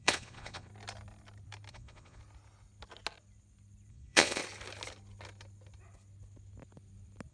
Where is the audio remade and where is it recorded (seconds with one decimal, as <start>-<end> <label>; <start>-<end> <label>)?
0.0-0.7 remade; 0.7-1.7 recorded; 1.7-2.2 remade; 2.2-3.9 recorded; 3.9-4.4 remade; 4.4-7.3 recorded